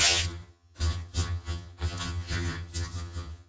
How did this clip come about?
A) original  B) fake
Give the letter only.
B